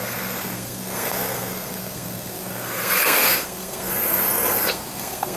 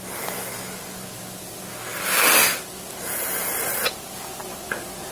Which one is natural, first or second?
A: second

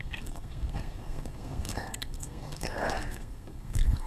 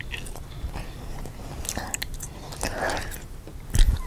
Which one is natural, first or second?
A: second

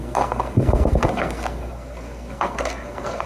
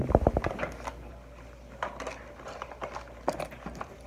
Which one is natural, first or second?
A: second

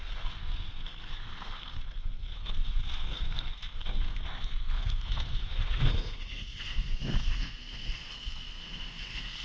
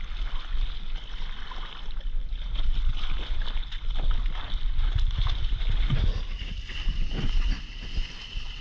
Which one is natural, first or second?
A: second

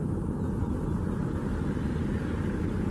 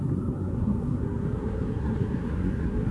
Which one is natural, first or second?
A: first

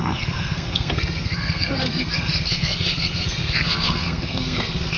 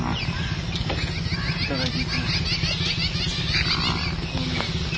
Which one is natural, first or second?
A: second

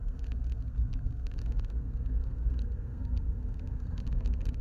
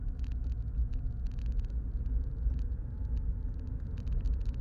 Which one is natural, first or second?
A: second